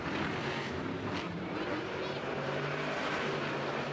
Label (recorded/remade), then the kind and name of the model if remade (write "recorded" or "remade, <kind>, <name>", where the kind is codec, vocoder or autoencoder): remade, vocoder, BigVGAN v2